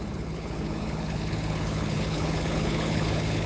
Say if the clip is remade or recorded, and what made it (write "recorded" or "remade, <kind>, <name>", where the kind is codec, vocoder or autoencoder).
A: remade, codec, HILCodec